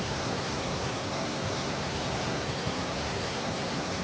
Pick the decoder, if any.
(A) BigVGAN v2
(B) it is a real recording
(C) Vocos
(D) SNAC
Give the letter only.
D